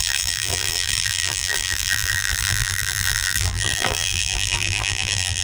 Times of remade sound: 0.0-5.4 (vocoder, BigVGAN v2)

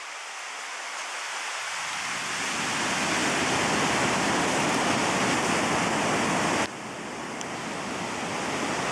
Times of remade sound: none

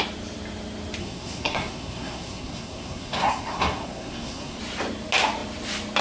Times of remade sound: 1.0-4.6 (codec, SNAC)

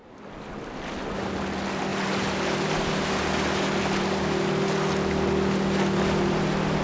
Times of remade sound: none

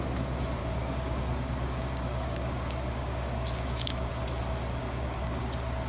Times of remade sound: 0.6-4.1 (codec, DAC); 4.8-5.4

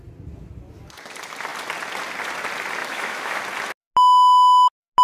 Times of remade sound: 2.8-3.4 (autoencoder, DAC-VAE)